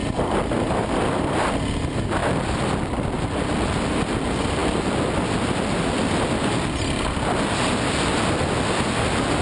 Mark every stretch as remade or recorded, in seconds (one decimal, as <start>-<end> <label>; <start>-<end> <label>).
0.0-9.4 recorded